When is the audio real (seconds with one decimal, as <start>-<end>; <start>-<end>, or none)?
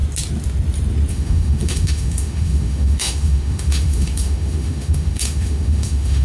0.0-1.1